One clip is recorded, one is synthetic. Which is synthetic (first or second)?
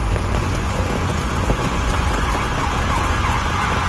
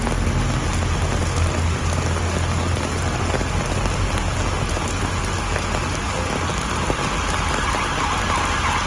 first